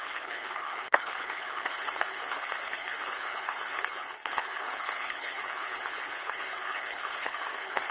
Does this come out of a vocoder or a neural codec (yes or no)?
yes